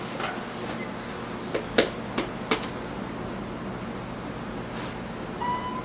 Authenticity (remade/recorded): recorded